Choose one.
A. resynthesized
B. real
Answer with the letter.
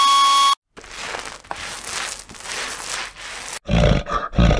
B